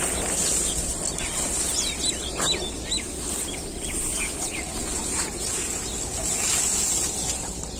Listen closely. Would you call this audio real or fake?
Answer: real